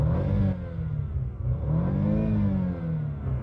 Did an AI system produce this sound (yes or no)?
no